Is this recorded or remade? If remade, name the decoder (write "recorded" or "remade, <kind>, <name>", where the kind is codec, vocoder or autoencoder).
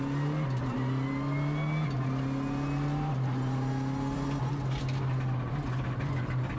recorded